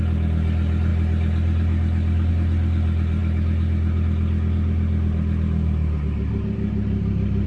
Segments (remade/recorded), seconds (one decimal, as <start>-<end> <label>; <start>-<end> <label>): 0.0-7.5 recorded